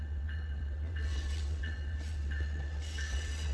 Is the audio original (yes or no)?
no